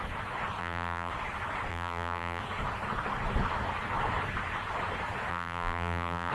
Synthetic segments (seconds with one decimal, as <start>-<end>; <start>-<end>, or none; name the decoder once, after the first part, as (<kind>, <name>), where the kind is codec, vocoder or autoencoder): 0.6-1.1 (vocoder, BigVGAN v2); 1.7-2.4; 5.3-6.3